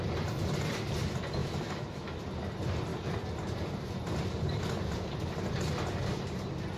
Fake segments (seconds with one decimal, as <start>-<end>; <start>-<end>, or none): 1.4-2.2